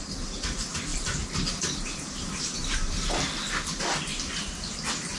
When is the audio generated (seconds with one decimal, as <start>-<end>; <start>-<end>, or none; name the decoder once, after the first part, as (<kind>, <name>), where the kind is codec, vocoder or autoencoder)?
0.9-3.1 (vocoder, BigVGAN v2)